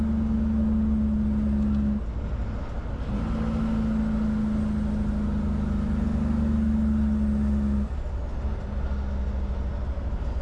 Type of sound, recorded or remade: recorded